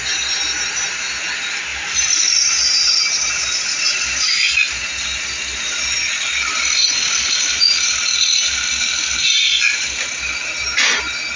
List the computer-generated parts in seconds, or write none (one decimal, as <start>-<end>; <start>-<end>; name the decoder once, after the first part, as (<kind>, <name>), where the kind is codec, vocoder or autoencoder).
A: 1.7-2.3 (vocoder, BigVGAN v2)